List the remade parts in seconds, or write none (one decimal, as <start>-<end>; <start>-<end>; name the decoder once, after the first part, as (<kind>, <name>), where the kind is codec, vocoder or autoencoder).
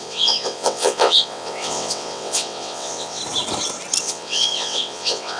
0.0-3.2 (vocoder, WaveNeXt); 4.0-5.4